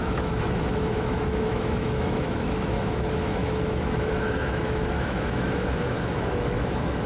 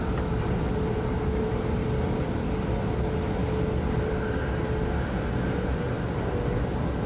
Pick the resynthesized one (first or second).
first